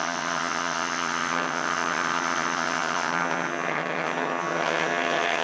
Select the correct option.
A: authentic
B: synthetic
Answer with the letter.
B